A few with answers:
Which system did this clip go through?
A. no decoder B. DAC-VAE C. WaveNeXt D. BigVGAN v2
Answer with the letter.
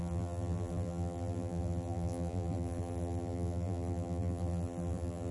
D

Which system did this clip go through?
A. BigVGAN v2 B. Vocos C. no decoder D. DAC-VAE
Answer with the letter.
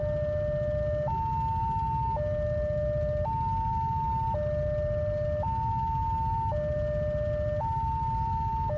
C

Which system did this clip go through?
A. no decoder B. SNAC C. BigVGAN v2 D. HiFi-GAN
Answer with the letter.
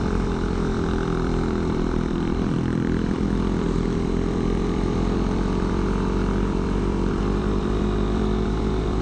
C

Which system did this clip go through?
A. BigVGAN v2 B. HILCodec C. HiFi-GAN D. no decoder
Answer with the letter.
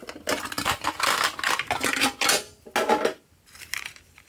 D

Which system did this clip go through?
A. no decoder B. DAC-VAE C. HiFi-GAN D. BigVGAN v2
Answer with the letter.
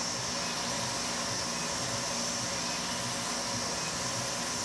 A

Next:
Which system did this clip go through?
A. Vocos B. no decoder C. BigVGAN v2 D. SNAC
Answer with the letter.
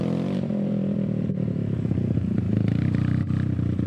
C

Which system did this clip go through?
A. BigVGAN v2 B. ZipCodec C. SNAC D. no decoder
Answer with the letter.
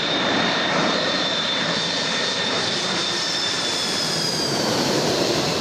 A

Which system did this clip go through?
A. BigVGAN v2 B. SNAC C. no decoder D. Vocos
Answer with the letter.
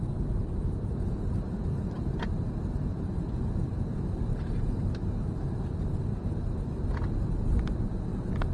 A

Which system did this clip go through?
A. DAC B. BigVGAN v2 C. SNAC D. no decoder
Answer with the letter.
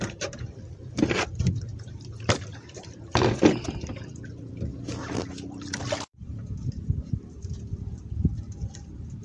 B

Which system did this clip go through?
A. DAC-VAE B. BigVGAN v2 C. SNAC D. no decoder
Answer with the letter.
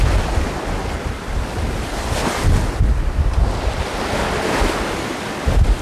D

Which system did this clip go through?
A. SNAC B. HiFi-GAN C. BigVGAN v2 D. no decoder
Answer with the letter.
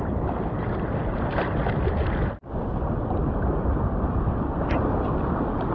D